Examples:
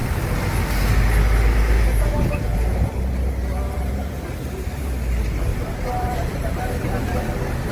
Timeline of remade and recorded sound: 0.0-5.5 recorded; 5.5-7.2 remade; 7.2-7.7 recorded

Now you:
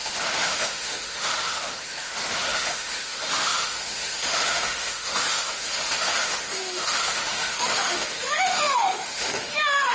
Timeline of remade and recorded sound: 0.0-9.9 remade

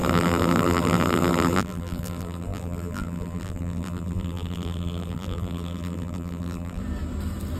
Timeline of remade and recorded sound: 0.0-6.8 remade; 6.8-7.6 recorded

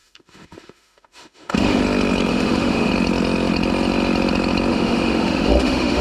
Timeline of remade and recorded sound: 0.0-1.8 remade; 1.8-2.3 recorded; 2.3-2.9 remade; 2.9-4.7 recorded; 4.7-6.0 remade

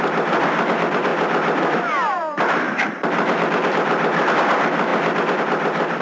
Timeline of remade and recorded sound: 0.0-6.0 remade

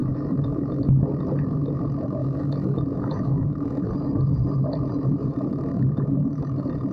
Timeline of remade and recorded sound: 0.0-1.0 remade; 1.0-2.2 recorded; 2.2-3.9 remade; 3.9-5.5 recorded; 5.5-6.4 remade; 6.4-6.9 recorded

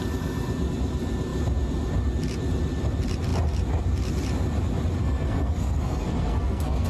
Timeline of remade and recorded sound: 0.0-5.0 recorded; 5.0-6.9 remade